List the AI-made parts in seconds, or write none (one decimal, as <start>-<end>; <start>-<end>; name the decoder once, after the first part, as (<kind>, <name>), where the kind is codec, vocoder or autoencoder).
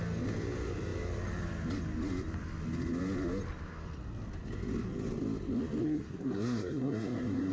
5.8-7.5 (codec, SNAC)